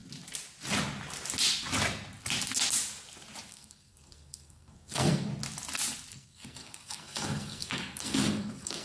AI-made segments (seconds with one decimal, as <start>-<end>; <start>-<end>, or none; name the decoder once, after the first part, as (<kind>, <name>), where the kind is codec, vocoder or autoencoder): 3.5-5.3 (codec, SNAC); 6.1-8.8